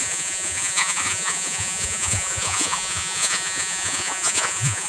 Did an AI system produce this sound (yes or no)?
yes